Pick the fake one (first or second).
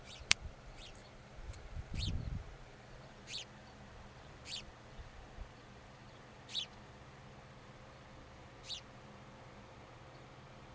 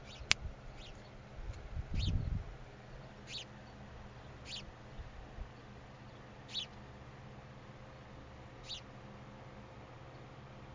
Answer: first